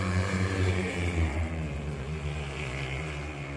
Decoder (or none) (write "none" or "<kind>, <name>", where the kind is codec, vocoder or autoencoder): vocoder, Vocos